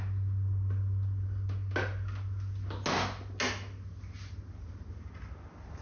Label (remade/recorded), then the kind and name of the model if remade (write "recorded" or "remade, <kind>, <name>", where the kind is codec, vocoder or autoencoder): recorded